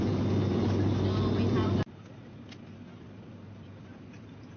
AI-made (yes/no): no